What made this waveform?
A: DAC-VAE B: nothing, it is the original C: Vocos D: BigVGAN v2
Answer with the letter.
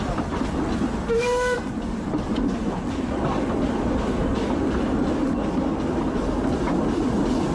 B